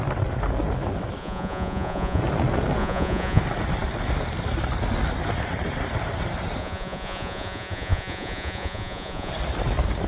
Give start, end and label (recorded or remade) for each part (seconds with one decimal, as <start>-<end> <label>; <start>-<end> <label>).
0.0-1.2 recorded; 1.2-2.2 remade; 2.2-2.8 recorded; 2.8-3.4 remade; 3.4-6.6 recorded; 6.6-9.3 remade; 9.3-10.1 recorded